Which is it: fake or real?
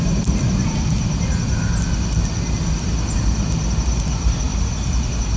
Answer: real